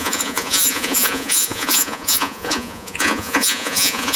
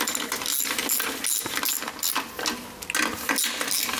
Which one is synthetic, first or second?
first